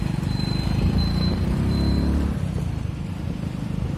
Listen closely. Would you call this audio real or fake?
fake